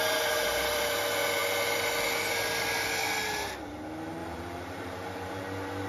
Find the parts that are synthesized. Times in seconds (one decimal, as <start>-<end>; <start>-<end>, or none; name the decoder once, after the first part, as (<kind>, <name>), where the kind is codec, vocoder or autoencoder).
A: 4.2-5.4 (vocoder, BigVGAN v2)